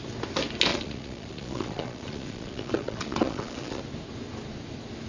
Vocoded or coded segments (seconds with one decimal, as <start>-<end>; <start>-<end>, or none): 0.7-3.8